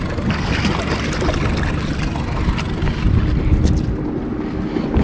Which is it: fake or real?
real